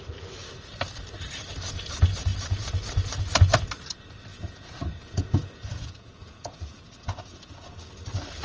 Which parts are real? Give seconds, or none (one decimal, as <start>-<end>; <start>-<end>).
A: 0.0-4.3; 7.9-8.4